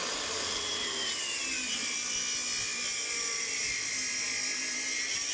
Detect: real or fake fake